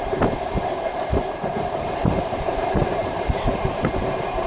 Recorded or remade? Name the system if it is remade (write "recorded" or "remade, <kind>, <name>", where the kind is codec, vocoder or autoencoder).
remade, vocoder, BigVGAN v2